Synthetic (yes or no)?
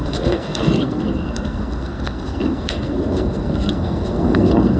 yes